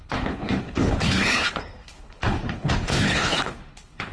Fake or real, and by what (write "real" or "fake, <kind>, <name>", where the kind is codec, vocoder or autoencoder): fake, codec, HILCodec